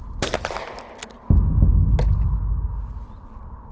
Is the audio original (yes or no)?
yes